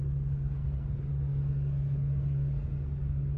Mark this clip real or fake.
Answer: fake